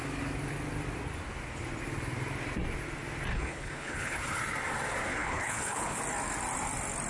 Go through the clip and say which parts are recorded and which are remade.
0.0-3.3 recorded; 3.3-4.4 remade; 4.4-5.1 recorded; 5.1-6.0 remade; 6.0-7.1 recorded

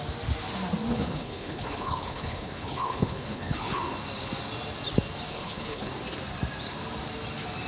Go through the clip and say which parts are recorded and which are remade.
0.0-0.9 recorded; 0.9-3.8 remade; 3.8-5.3 recorded; 5.3-5.9 remade; 5.9-7.7 recorded

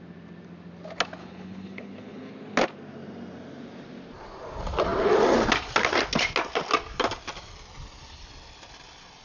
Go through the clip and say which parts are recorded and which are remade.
0.0-1.2 recorded; 1.2-2.3 remade; 2.3-9.2 recorded

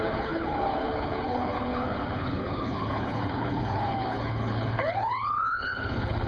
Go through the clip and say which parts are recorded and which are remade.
0.0-6.3 remade

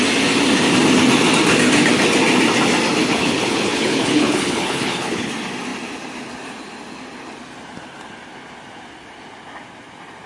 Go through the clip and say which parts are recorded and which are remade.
0.0-3.0 recorded; 3.0-5.3 remade; 5.3-10.3 recorded